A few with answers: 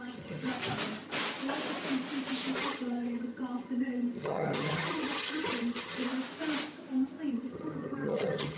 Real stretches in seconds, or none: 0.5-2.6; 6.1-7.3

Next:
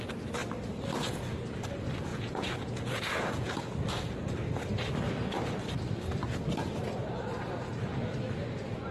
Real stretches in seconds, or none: 0.0-2.1; 3.6-8.9

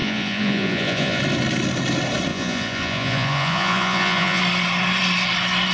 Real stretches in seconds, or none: 1.2-2.3; 4.4-5.7

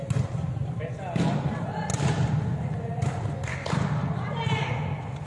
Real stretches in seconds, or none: 0.0-5.3

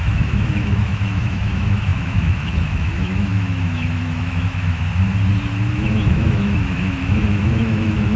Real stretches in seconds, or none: 4.9-5.7